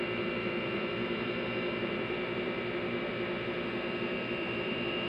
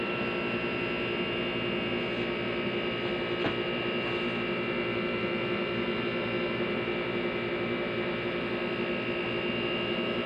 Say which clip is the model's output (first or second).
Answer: first